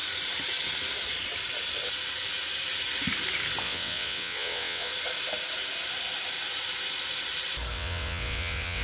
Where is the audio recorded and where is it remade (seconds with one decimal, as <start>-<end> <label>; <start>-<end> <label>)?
0.0-3.6 recorded; 3.6-4.9 remade; 4.9-7.7 recorded; 7.7-8.8 remade